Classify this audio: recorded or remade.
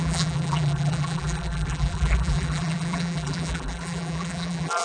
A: remade